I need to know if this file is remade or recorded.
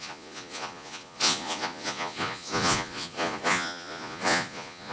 remade